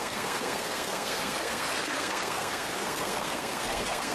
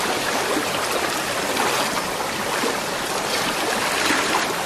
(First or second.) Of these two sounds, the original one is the second